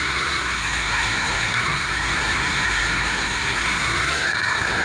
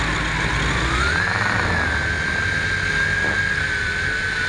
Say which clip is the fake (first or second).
first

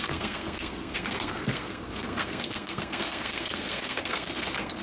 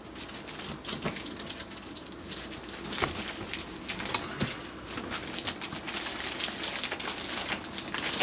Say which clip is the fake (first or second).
first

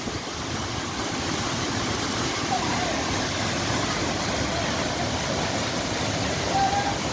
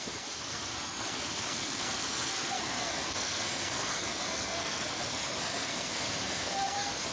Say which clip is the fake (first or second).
second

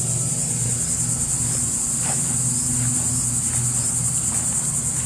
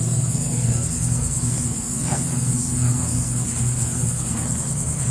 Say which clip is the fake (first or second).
second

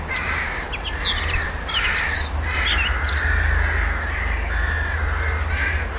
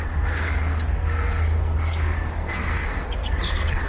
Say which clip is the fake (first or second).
second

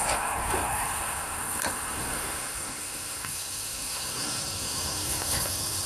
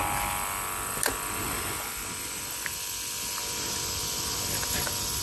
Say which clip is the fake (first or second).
first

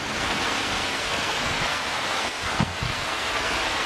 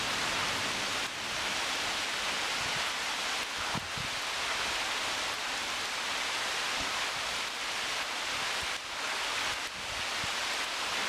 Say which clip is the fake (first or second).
first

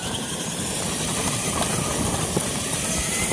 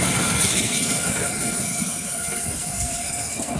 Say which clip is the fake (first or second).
second